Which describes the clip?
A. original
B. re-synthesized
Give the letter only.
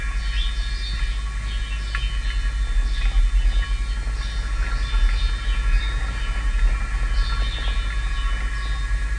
A